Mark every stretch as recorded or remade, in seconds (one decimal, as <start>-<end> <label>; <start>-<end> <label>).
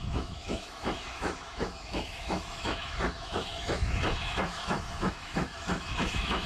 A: 0.0-6.5 remade